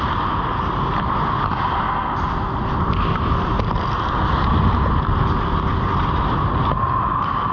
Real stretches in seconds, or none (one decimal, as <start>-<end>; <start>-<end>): 0.0-7.5